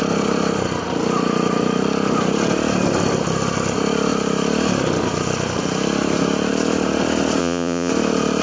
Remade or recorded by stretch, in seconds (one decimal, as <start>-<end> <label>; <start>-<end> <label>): 0.0-7.4 recorded; 7.4-7.9 remade; 7.9-8.4 recorded